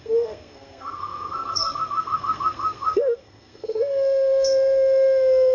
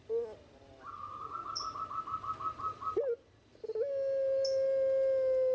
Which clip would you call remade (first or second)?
first